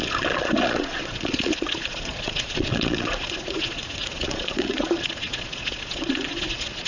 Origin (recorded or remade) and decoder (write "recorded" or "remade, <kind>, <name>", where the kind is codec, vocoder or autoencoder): remade, vocoder, Vocos